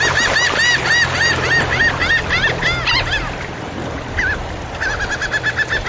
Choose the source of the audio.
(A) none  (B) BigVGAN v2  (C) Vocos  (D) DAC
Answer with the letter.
A